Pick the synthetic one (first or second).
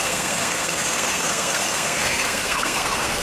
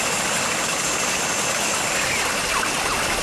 first